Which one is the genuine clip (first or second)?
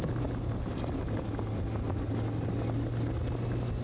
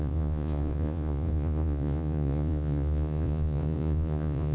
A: first